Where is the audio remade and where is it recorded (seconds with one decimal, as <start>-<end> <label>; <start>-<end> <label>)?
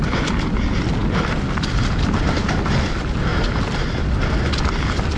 0.0-5.2 recorded